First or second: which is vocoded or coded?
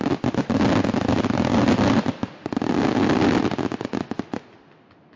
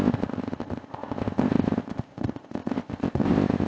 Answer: second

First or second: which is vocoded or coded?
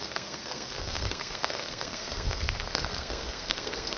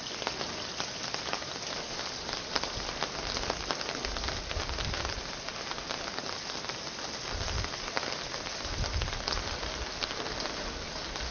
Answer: first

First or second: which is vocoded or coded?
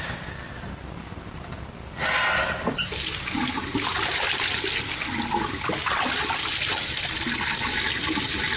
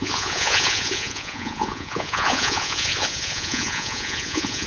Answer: second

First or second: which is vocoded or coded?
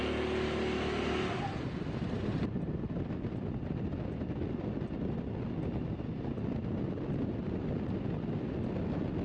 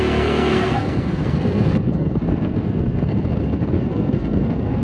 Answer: second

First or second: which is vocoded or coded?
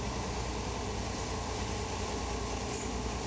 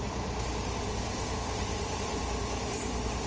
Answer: second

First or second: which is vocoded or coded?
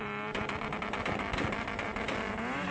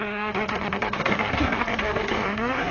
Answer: second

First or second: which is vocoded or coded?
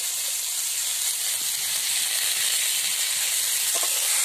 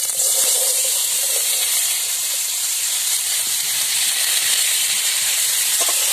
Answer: second